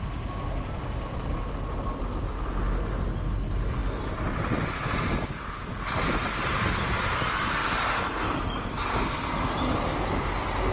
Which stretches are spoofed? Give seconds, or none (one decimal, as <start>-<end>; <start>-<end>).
none